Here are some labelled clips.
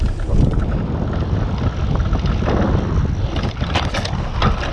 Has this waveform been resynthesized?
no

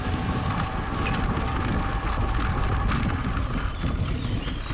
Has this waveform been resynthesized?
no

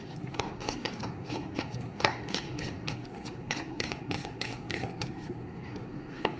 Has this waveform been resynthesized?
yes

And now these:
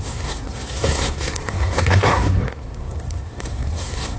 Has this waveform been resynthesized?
yes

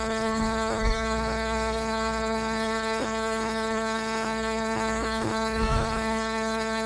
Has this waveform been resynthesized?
yes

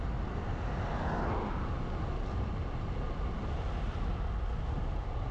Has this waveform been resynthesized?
no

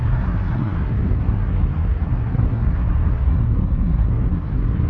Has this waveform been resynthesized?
yes